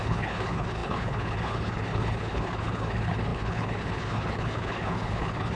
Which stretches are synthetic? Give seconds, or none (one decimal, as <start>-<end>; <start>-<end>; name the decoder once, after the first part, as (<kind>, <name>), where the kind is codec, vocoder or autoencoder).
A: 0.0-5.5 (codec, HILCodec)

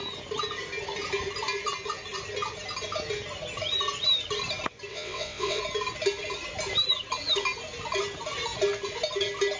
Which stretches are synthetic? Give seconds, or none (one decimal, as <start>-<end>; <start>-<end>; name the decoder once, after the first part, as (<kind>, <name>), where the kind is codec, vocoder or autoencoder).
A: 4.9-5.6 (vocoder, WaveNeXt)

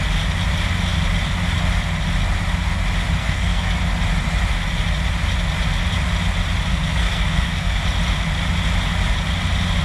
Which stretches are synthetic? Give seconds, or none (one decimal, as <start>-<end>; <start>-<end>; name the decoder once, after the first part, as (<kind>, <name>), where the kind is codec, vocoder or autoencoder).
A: 3.2-3.8 (codec, SNAC); 6.7-7.8

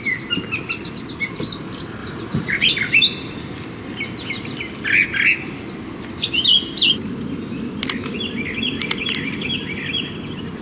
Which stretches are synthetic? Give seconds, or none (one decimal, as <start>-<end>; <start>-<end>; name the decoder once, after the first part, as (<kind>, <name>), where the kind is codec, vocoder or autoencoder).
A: 2.0-2.7 (vocoder, Vocos)

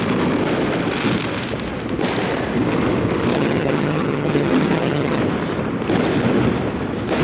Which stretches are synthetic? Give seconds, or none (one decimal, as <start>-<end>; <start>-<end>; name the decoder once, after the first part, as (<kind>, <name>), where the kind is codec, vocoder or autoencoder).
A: 3.3-5.2 (vocoder, HiFi-GAN)

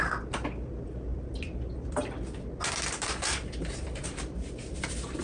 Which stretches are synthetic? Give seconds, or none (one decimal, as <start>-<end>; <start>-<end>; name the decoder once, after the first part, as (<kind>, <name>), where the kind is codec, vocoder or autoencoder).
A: none

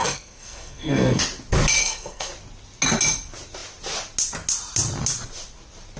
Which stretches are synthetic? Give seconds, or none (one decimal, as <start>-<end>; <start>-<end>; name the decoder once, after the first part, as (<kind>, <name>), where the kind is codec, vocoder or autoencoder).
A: 0.0-1.2 (codec, SNAC); 1.8-2.3

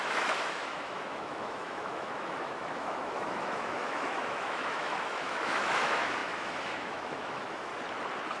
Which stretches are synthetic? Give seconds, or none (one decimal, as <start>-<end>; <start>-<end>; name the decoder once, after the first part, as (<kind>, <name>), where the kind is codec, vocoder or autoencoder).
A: 0.0-7.7 (autoencoder, DAC-VAE)